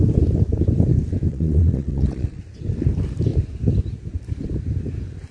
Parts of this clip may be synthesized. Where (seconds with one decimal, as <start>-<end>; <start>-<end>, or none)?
1.3-2.4